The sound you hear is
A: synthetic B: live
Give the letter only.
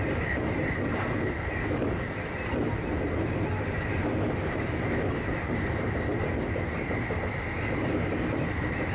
B